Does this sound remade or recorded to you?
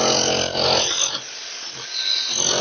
recorded